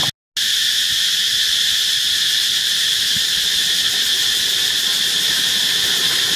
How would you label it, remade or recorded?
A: recorded